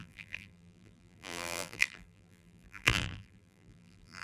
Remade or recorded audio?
remade